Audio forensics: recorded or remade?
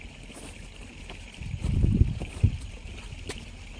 recorded